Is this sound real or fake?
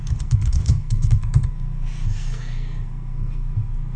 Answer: fake